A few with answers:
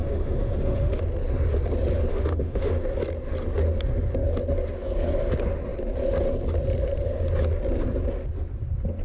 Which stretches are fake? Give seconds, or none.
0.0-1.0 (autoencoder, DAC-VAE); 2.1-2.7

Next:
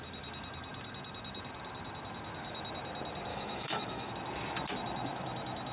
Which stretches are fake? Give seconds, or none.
3.3-4.1 (autoencoder, DAC-VAE)

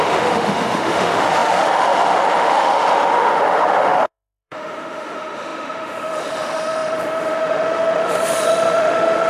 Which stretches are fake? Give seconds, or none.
0.0-9.3 (autoencoder, DAC-VAE)